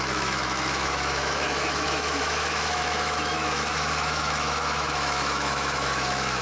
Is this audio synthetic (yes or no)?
yes